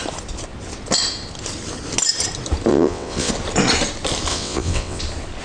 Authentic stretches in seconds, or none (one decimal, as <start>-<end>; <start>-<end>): 0.0-2.7; 3.3-4.3; 5.0-5.4